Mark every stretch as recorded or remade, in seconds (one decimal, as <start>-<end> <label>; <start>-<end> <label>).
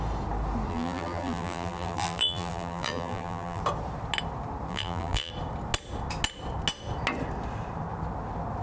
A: 0.0-0.7 recorded; 0.7-3.6 remade; 3.6-4.7 recorded; 4.7-5.3 remade; 5.3-8.6 recorded